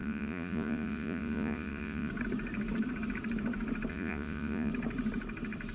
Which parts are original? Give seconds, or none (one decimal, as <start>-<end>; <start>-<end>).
2.1-3.9; 4.7-5.7